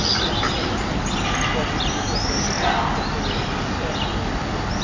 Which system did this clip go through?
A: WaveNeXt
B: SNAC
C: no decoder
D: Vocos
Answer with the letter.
C